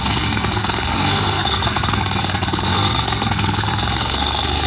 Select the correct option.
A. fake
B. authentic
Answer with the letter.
A